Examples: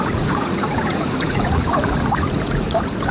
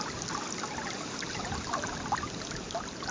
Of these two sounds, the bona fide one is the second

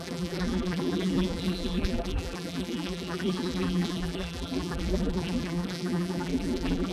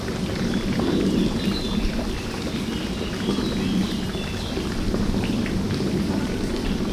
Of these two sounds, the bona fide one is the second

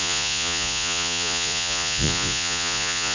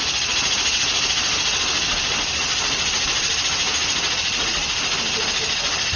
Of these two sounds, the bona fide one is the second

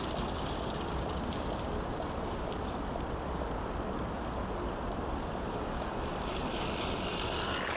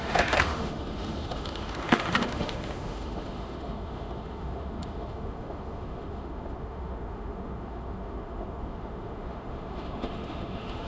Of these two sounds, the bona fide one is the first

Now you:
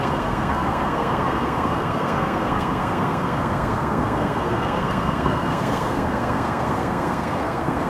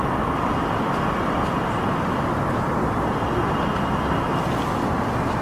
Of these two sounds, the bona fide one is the second